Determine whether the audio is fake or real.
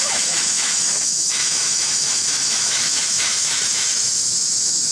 fake